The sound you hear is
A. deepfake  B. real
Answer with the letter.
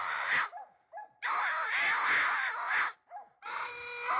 B